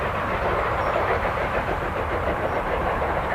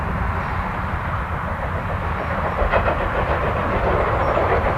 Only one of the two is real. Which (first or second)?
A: second